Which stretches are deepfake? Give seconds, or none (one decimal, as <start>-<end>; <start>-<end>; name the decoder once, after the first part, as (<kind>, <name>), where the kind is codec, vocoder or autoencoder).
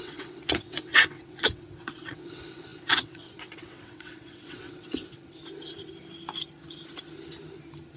0.0-5.4 (vocoder, WaveNeXt)